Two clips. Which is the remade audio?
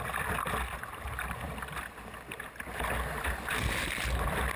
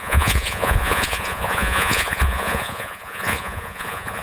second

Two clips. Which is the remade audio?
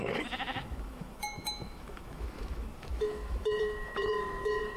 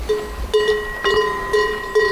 first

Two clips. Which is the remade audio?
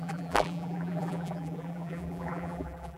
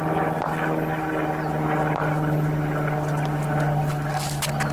first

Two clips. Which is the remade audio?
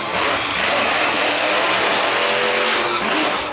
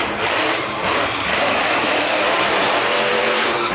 second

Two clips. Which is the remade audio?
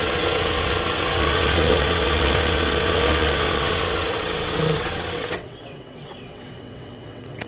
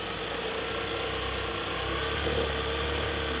first